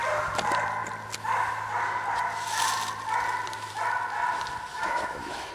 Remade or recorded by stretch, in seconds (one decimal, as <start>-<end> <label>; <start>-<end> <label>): 0.0-4.7 recorded; 4.7-5.5 remade